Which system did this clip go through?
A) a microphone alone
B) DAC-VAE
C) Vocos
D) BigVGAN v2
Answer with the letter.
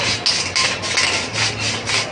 A